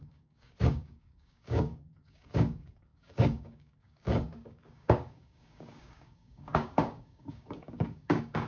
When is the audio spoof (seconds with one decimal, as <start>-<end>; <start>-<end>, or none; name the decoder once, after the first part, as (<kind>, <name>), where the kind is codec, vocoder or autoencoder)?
0.0-8.5 (codec, DAC)